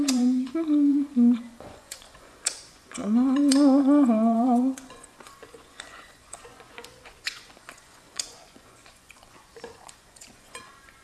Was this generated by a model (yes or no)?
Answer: yes